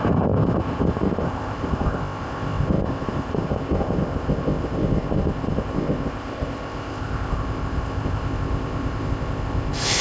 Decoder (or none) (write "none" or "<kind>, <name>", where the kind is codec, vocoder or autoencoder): codec, ZipCodec